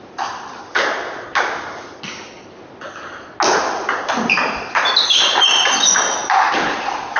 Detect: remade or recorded recorded